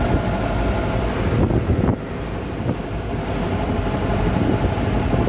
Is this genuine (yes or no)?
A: yes